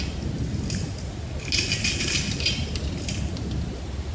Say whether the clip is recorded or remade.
recorded